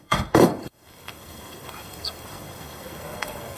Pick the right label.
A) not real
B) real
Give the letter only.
A